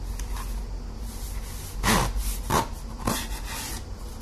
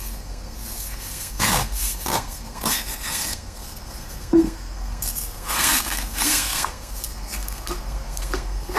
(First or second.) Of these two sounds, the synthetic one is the second